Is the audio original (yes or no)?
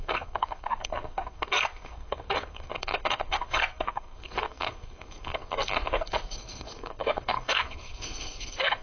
no